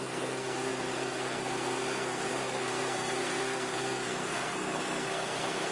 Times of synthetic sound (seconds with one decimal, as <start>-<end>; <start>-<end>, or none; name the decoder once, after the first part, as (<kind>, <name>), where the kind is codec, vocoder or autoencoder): 0.0-5.7 (codec, SNAC)